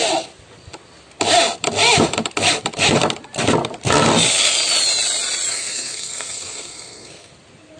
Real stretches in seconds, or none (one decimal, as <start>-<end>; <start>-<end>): 0.0-5.5; 7.3-7.8